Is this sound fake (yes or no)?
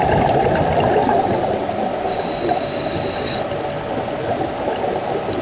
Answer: no